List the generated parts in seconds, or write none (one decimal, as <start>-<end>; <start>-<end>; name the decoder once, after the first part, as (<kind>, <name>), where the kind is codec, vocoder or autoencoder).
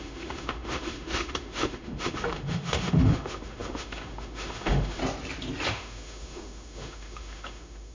0.0-5.0 (autoencoder, DAC-VAE); 5.7-7.9